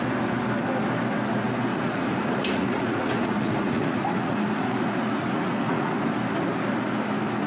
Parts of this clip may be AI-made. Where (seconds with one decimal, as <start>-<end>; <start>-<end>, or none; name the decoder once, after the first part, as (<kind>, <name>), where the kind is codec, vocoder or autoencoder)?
1.7-5.9 (vocoder, Vocos)